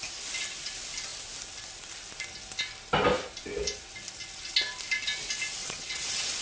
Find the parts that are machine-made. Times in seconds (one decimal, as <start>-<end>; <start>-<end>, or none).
5.6-6.4